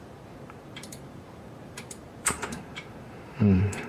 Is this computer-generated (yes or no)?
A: yes